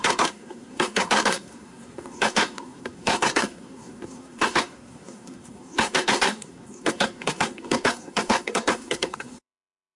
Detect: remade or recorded remade